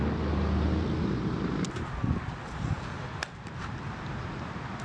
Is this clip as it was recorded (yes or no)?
yes